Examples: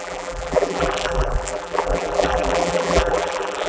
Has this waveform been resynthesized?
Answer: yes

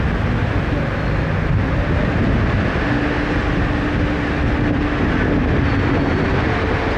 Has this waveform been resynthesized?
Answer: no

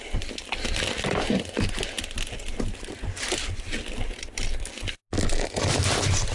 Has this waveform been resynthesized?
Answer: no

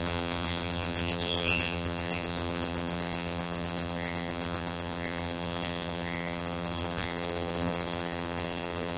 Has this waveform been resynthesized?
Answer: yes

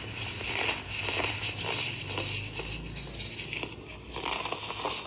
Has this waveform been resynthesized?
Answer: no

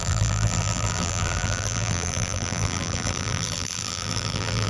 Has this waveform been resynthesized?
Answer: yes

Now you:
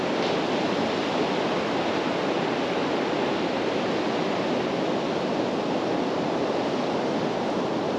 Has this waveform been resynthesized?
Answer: no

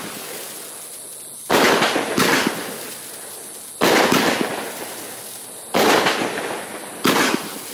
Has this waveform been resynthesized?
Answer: no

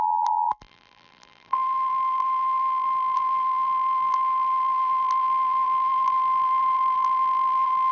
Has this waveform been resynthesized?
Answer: yes